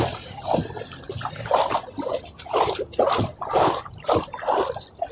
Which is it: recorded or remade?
recorded